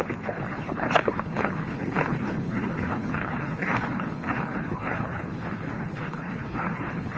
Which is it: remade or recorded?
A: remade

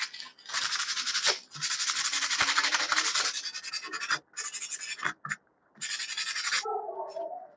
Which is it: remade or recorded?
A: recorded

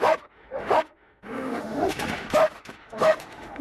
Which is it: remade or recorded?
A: remade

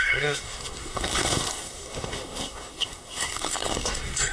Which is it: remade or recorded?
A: remade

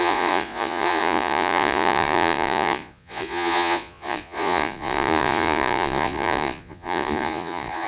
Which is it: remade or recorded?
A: remade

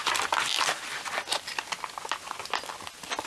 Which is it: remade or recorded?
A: recorded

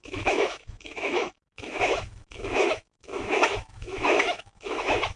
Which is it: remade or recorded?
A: remade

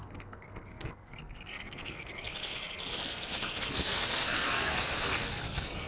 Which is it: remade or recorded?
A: remade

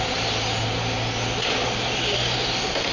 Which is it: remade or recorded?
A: recorded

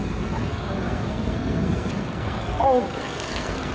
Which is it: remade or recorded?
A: remade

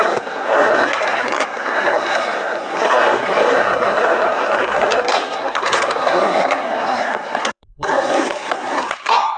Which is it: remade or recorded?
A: remade